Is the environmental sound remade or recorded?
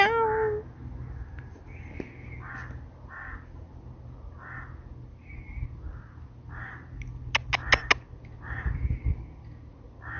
recorded